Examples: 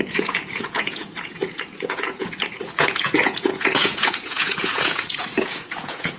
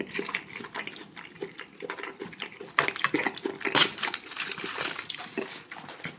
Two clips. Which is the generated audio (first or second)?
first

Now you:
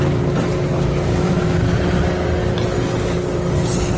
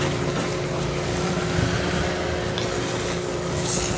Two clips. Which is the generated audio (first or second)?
first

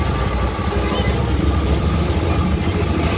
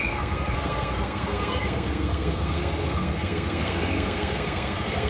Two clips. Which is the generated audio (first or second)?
second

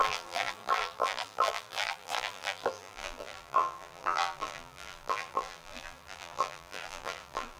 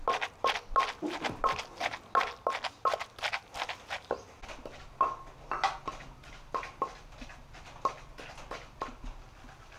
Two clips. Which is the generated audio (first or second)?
first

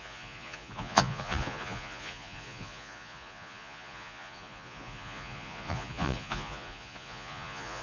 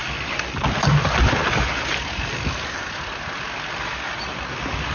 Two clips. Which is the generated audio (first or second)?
first